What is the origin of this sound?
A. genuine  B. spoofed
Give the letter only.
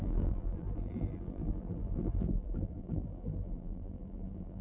B